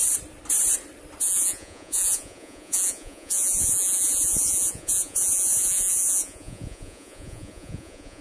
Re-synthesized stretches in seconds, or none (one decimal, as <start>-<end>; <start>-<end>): 1.2-8.2